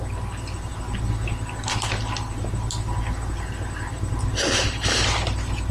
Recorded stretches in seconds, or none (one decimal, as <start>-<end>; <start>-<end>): 0.0-5.7